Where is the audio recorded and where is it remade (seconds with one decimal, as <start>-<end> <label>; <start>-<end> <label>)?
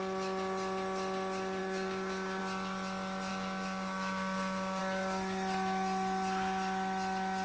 0.0-1.6 recorded; 1.6-2.4 remade; 2.4-3.3 recorded; 3.3-4.8 remade; 4.8-7.4 recorded